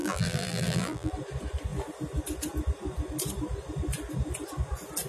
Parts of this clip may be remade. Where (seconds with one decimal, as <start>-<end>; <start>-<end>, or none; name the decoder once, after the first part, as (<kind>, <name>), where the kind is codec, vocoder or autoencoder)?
0.0-1.1 (vocoder, BigVGAN v2)